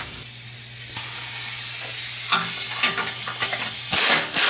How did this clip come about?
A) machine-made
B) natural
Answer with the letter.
B